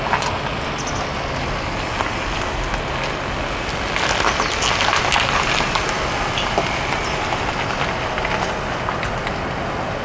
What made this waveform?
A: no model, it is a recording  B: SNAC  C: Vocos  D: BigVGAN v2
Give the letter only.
A